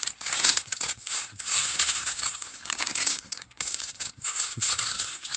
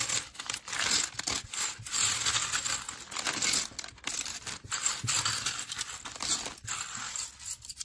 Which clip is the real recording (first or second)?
second